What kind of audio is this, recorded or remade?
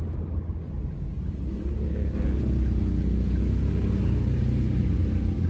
recorded